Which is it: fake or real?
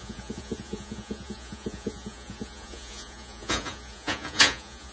fake